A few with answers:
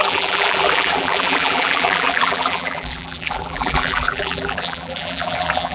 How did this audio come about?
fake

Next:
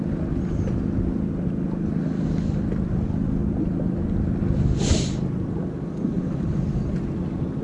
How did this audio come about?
real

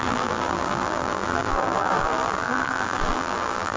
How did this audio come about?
fake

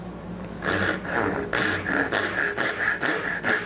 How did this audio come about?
real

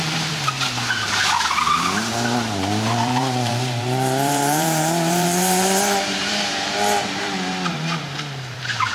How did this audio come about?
fake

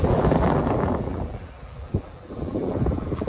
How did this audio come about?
fake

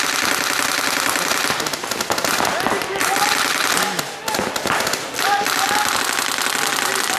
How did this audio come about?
real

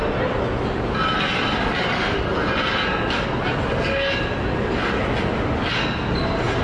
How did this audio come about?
real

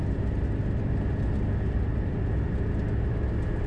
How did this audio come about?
real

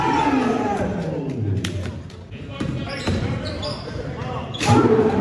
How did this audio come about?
fake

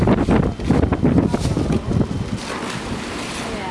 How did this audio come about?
real